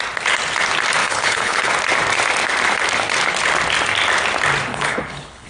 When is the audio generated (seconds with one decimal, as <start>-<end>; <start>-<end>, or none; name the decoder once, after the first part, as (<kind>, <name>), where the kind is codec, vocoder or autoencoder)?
1.0-1.7 (codec, HILCodec); 4.7-5.5